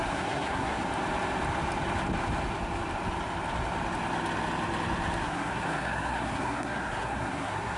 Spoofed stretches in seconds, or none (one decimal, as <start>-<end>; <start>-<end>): 0.0-0.8; 5.2-7.8